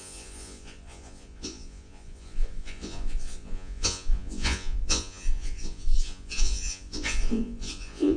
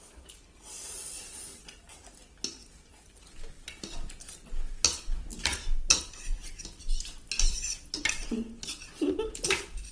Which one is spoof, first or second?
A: first